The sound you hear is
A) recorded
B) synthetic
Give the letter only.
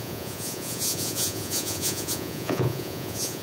B